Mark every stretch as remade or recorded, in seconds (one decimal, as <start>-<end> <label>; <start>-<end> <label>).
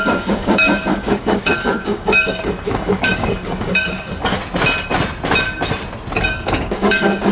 0.0-4.4 remade; 4.4-6.2 recorded; 6.2-7.3 remade